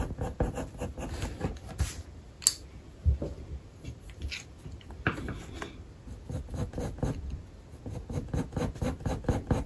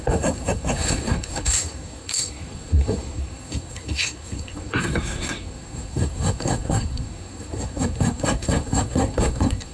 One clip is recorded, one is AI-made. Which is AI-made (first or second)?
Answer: second